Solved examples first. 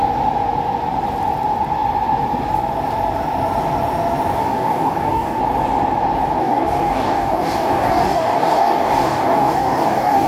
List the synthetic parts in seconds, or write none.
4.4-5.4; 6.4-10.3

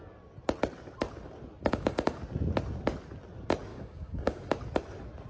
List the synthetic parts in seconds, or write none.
1.6-2.2; 3.7-4.5